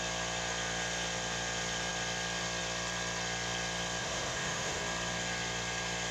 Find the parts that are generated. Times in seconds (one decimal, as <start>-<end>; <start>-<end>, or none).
4.0-4.8

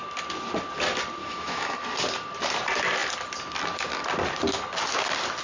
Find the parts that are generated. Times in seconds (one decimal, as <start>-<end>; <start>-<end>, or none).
1.2-1.7

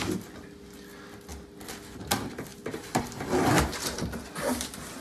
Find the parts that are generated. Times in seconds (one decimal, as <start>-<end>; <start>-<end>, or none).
none

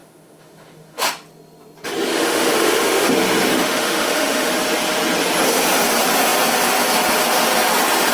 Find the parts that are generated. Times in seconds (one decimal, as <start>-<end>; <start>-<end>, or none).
0.0-1.1; 2.1-3.1; 3.5-4.5

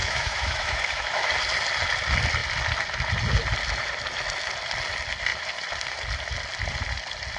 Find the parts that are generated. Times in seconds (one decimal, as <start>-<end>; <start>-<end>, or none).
0.0-1.3

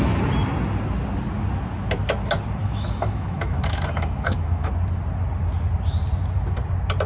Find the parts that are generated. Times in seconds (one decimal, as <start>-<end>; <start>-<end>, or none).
2.6-4.7

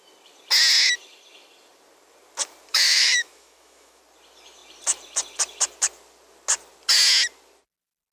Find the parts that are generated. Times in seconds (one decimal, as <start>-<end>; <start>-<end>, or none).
2.7-4.0